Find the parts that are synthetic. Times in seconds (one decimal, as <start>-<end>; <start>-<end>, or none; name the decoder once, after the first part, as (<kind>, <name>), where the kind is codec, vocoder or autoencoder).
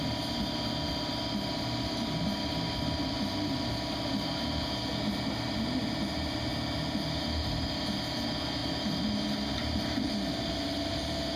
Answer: none